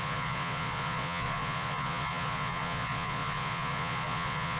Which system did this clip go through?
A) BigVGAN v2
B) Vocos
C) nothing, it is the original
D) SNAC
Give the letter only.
B